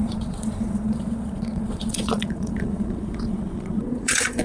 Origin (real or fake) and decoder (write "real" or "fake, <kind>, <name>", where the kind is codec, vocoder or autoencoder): fake, vocoder, Vocos